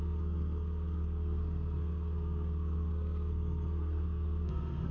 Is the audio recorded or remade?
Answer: remade